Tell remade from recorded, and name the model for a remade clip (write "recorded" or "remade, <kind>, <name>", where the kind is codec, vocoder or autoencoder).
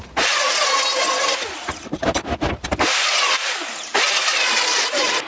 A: recorded